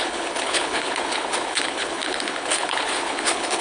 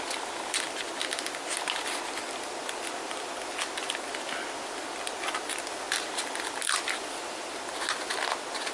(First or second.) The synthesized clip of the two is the first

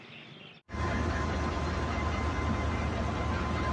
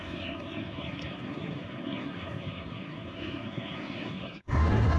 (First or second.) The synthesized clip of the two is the second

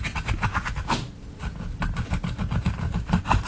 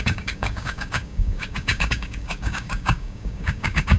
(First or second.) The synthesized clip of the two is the second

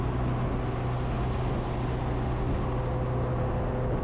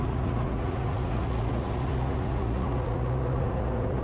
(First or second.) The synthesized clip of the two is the second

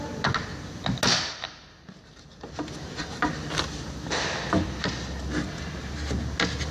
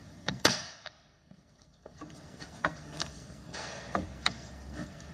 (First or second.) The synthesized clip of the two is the second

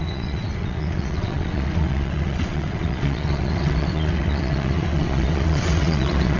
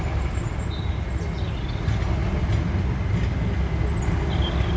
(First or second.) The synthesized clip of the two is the first